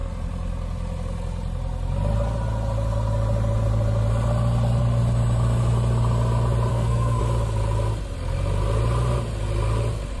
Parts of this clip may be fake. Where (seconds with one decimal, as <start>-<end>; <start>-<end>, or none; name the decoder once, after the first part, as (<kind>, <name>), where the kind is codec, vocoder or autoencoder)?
6.7-7.2 (codec, SNAC)